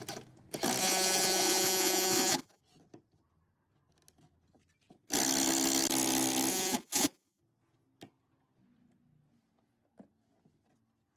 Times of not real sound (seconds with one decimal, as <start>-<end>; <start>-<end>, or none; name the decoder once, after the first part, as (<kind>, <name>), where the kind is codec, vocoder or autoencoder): 0.8-2.6 (vocoder, Vocos); 6.5-7.4